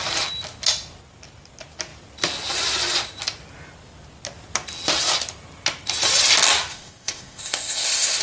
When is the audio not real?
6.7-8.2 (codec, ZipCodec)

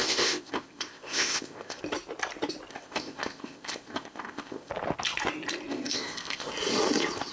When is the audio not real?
0.0-1.8 (codec, ZipCodec); 2.7-4.7; 5.7-6.5

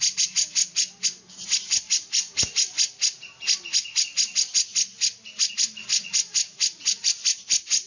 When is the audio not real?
none

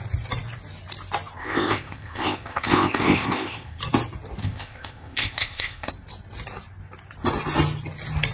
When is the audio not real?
1.4-3.8 (codec, ZipCodec); 4.4-5.9

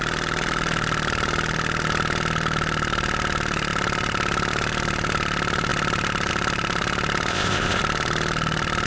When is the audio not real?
7.3-7.8 (codec, ZipCodec)

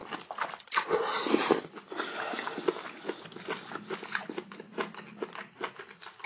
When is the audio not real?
none

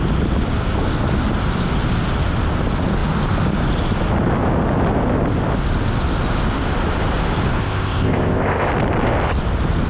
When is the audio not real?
7.6-8.7 (codec, ZipCodec)